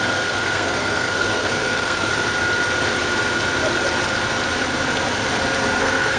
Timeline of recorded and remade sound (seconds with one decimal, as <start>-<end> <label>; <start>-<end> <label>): 0.0-2.1 remade; 2.1-5.8 recorded; 5.8-6.2 remade